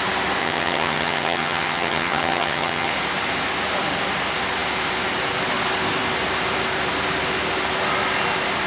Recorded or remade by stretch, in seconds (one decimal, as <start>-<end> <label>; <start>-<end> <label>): 0.0-0.4 recorded; 0.4-2.9 remade; 2.9-8.7 recorded